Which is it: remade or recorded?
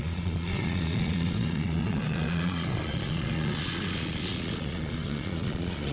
remade